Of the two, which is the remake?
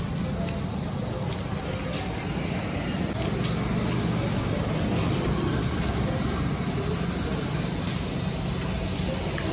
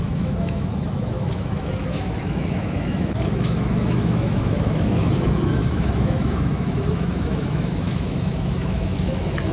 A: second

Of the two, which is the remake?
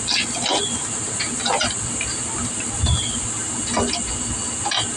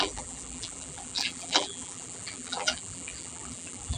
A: second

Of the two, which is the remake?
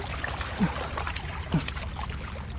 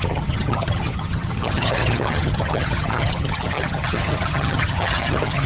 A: second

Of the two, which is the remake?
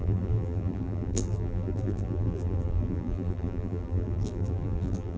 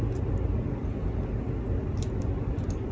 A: first